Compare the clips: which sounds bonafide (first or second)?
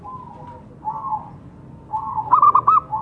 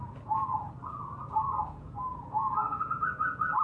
first